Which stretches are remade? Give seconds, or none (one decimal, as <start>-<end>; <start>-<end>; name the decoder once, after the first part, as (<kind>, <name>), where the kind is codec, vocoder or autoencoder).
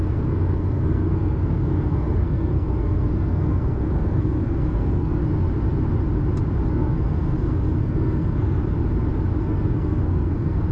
0.0-5.2 (codec, SNAC); 6.7-8.6; 9.4-10.7